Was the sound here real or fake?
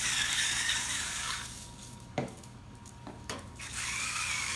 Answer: fake